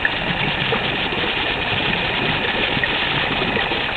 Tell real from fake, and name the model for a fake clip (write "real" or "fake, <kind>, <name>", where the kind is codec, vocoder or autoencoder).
real